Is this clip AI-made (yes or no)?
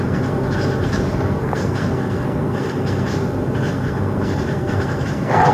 yes